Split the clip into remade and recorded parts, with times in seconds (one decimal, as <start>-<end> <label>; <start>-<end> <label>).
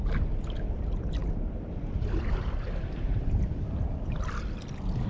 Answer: 0.0-5.1 recorded